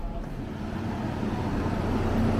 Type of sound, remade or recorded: recorded